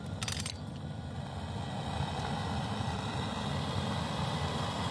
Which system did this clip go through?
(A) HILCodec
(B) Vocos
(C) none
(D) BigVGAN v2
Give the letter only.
C